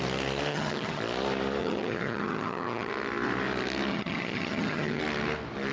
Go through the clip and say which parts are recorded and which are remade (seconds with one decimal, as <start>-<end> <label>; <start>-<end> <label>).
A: 0.0-0.5 recorded; 0.5-1.0 remade; 1.0-1.6 recorded; 1.6-2.9 remade; 2.9-3.9 recorded; 3.9-5.0 remade; 5.0-5.7 recorded